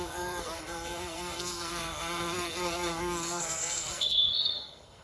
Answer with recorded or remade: remade